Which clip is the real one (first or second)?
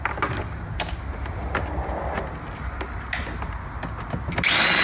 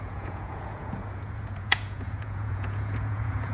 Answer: first